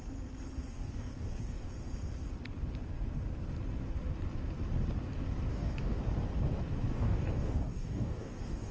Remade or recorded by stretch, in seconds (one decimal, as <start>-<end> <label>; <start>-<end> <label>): 0.0-0.7 recorded; 0.7-1.7 remade; 1.7-5.5 recorded; 5.5-6.0 remade; 6.0-6.9 recorded; 6.9-8.7 remade